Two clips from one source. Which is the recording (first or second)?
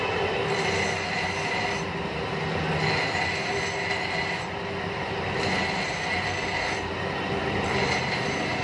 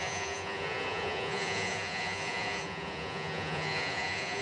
first